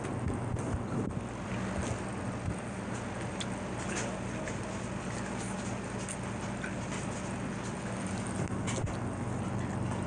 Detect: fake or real real